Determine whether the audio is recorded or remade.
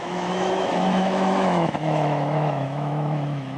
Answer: remade